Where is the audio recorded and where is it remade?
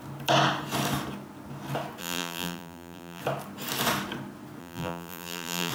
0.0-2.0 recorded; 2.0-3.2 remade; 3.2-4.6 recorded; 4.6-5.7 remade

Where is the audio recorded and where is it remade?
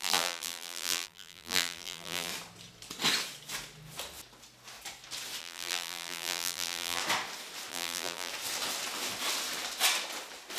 0.0-2.3 remade; 2.3-5.4 recorded; 5.4-7.0 remade; 7.0-7.7 recorded; 7.7-8.3 remade; 8.3-10.6 recorded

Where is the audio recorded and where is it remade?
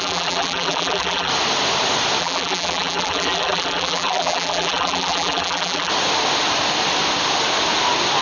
0.0-1.3 remade; 1.3-2.2 recorded; 2.2-5.9 remade; 5.9-8.2 recorded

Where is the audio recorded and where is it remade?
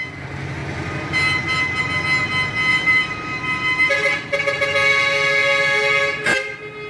0.0-2.7 recorded; 2.7-3.9 remade; 3.9-6.9 recorded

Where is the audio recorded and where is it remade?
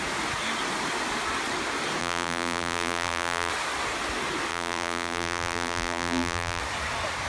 0.0-2.0 recorded; 2.0-3.5 remade; 3.5-4.5 recorded; 4.5-6.6 remade; 6.6-7.3 recorded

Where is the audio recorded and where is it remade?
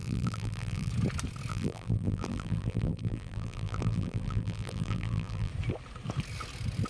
0.0-0.9 remade; 0.9-1.5 recorded; 1.5-5.5 remade; 5.5-6.9 recorded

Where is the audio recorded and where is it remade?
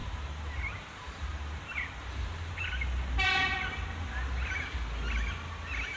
0.0-3.6 remade; 3.6-6.0 recorded